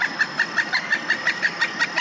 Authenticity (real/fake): real